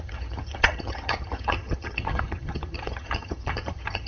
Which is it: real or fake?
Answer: fake